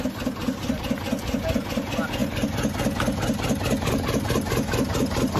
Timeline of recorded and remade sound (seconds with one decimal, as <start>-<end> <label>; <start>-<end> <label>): 0.0-5.4 recorded